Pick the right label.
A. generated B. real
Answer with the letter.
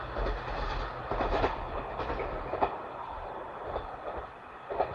B